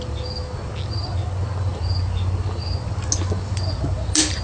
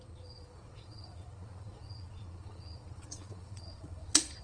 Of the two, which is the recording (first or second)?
first